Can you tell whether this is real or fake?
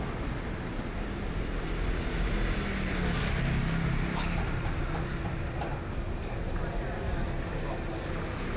real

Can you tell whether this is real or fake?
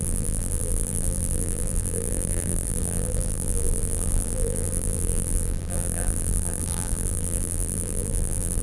fake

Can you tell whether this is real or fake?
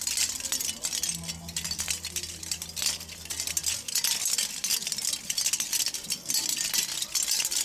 real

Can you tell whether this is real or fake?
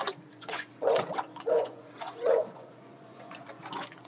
fake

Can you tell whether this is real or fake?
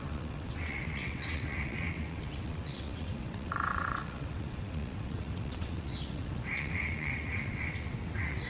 fake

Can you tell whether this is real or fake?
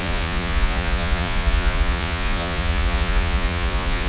fake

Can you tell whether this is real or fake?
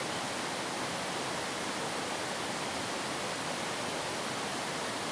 real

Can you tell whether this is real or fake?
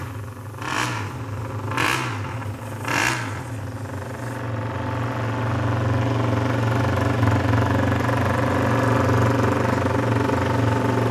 real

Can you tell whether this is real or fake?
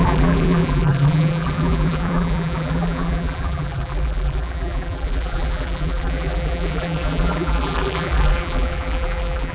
fake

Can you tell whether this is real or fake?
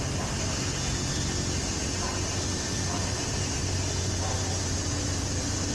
real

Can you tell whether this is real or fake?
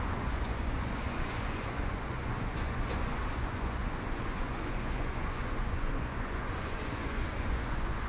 fake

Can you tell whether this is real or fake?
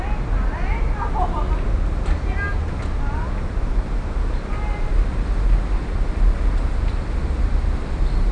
real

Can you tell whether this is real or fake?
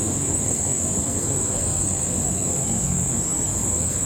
fake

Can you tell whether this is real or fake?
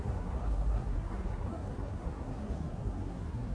fake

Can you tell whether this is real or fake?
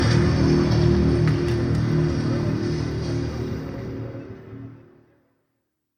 real